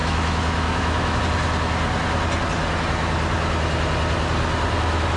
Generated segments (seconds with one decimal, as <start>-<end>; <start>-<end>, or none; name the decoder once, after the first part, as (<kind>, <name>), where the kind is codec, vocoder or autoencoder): 0.0-1.2 (autoencoder, DAC-VAE)